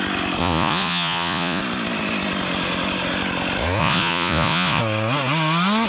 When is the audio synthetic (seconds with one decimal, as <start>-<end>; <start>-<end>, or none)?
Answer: 0.4-1.6; 3.8-4.8